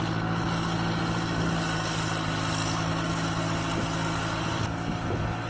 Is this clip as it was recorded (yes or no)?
yes